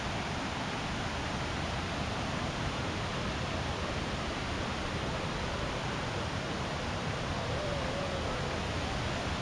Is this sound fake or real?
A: real